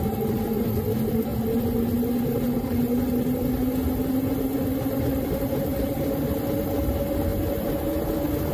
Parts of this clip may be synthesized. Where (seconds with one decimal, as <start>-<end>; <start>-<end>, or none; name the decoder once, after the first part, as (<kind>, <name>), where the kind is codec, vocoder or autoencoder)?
7.3-8.1 (vocoder, BigVGAN v2)